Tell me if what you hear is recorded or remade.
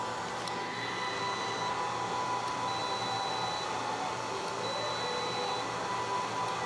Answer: recorded